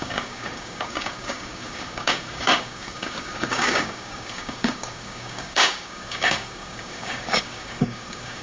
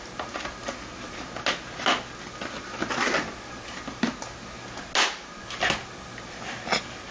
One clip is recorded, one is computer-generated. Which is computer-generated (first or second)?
first